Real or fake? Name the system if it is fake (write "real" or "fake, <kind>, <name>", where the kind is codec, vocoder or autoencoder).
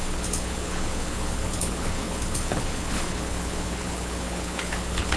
fake, codec, HILCodec